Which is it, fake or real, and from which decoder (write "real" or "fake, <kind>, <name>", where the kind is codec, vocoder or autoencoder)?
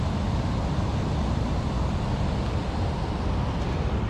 real